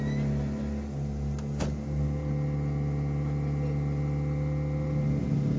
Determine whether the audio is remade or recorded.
recorded